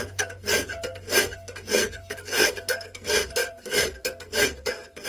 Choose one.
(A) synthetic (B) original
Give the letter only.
A